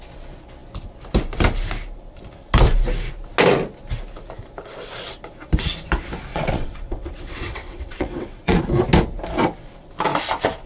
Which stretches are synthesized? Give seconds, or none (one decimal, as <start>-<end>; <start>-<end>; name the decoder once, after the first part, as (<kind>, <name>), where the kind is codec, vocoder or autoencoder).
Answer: 6.3-8.6 (vocoder, WaveNeXt)